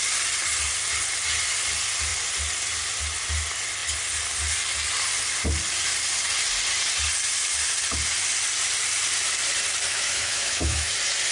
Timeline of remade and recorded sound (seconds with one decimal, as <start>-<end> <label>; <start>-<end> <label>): 0.0-9.9 recorded; 9.9-10.9 remade; 10.9-11.3 recorded